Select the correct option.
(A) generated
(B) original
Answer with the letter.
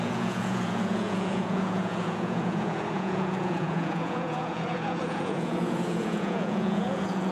A